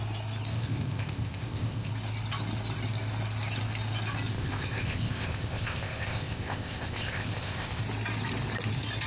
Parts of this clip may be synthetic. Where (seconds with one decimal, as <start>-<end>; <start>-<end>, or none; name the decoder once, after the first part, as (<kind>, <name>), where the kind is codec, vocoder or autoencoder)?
0.5-1.9 (codec, ZipCodec); 4.3-7.8